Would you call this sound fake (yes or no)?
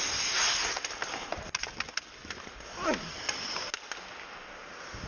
no